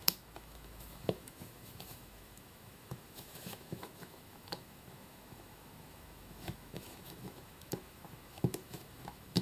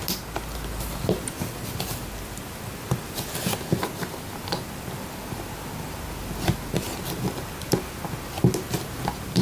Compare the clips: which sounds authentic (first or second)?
second